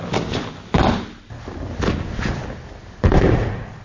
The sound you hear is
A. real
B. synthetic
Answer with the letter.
A